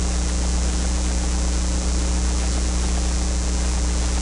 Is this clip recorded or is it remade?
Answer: recorded